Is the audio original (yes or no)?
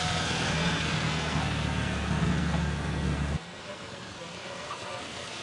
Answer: no